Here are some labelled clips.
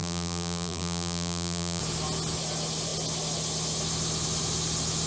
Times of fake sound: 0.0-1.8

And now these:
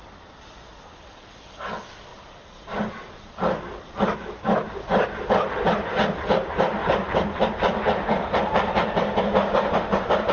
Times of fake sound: 2.1-3.3; 6.8-7.5; 8.2-9.2

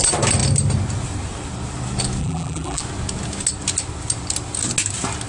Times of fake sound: 2.2-2.8

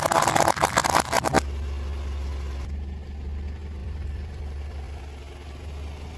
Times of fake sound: 3.8-5.0

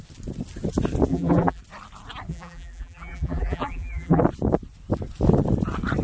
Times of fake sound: 1.1-1.6; 2.3-4.2